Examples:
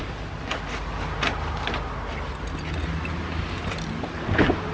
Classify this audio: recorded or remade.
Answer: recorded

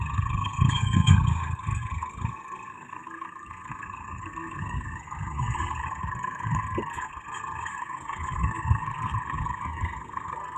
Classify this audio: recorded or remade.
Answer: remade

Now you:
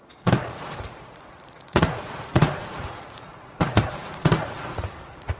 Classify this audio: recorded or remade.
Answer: remade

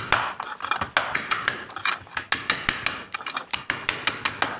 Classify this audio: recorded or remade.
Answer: recorded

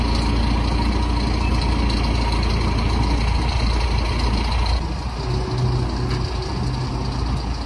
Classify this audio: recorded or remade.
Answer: recorded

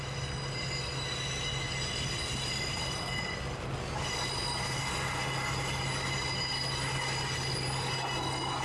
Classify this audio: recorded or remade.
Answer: recorded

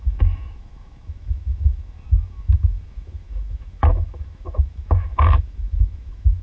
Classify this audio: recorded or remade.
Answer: remade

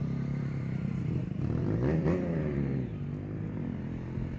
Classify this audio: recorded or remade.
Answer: remade